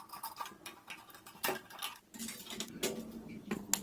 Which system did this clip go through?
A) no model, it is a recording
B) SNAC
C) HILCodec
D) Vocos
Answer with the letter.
A